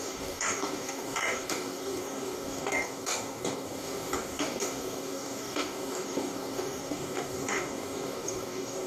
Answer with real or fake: fake